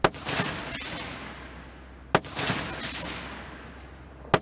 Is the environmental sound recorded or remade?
recorded